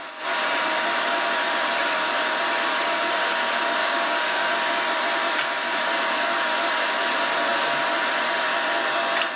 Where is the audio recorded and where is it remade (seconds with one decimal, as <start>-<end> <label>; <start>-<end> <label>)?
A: 0.0-3.8 recorded; 3.8-4.5 remade; 4.5-9.4 recorded

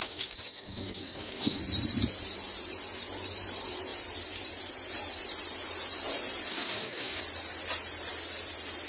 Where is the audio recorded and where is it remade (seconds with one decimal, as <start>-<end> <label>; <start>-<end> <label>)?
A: 0.0-1.6 remade; 1.6-6.5 recorded; 6.5-7.2 remade; 7.2-8.9 recorded

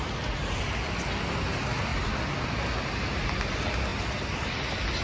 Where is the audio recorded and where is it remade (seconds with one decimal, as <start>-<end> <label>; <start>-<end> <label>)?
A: 0.0-5.0 recorded

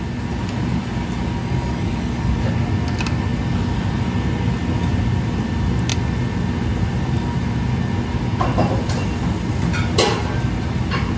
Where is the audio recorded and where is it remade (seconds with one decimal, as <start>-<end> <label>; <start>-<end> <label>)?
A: 0.0-1.4 recorded; 1.4-2.3 remade; 2.3-11.2 recorded

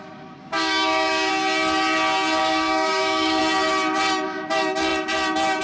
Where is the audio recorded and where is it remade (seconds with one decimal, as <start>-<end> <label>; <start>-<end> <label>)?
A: 0.0-0.4 recorded; 0.4-1.3 remade; 1.3-2.4 recorded; 2.4-3.4 remade; 3.4-5.6 recorded